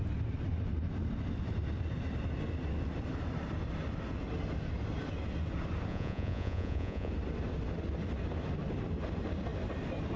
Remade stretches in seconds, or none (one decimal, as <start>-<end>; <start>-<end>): 5.9-7.1